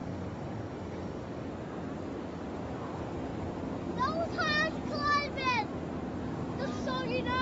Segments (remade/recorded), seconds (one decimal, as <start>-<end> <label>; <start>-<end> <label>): 0.0-1.5 remade; 1.5-7.4 recorded